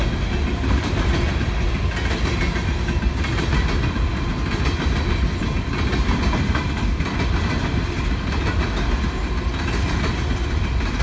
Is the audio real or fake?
real